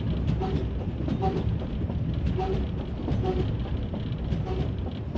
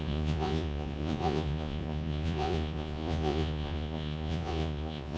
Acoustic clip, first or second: first